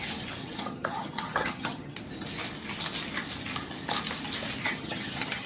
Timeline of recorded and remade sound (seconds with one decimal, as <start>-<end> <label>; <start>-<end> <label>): 0.0-0.4 recorded; 0.4-2.0 remade; 2.0-4.6 recorded; 4.6-5.5 remade